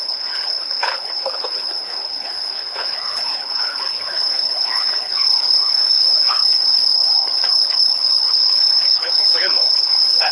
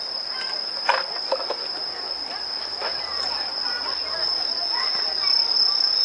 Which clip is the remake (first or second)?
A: first